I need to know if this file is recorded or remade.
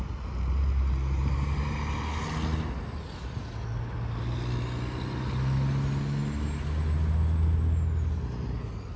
recorded